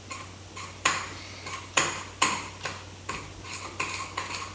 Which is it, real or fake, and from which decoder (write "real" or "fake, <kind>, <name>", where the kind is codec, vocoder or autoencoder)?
real